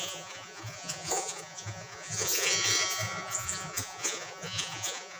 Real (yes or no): no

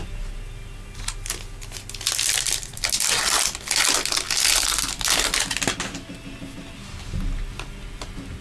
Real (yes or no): yes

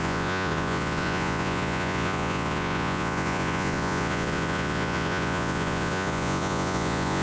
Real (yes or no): no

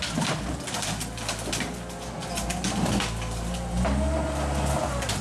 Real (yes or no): yes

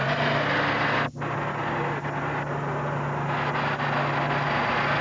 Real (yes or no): yes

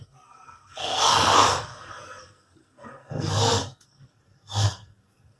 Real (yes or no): no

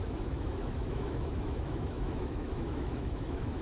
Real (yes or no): no